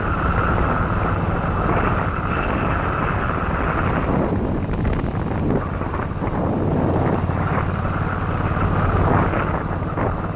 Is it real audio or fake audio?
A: real